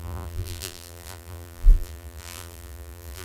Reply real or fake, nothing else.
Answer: fake